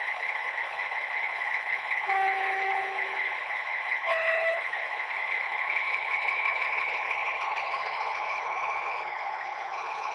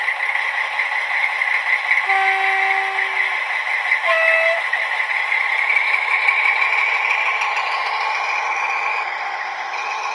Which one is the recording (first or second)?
second